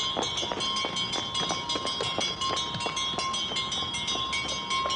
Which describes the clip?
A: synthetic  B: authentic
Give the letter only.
B